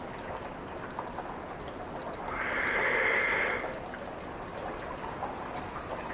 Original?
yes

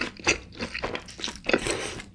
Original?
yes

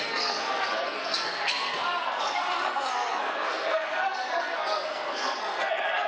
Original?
no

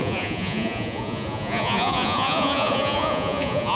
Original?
no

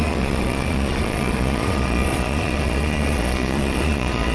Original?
no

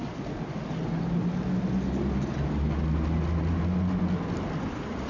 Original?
yes